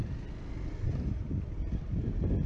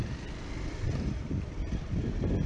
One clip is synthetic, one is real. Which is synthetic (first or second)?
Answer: second